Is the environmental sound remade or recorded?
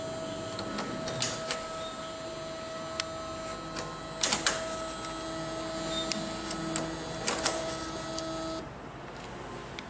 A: recorded